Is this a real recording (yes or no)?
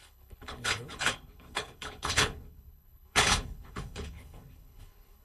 no